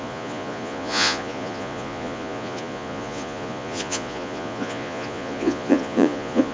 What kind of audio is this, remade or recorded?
remade